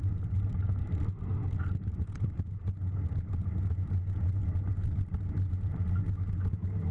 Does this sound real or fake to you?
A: real